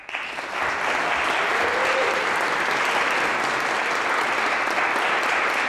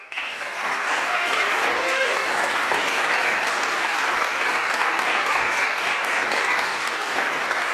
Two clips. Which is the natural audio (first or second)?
first